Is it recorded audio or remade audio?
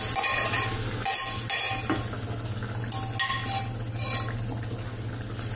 recorded